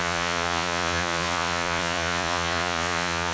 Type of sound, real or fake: fake